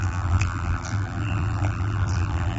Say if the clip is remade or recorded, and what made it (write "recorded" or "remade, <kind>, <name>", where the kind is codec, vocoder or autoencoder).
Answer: remade, vocoder, BigVGAN v2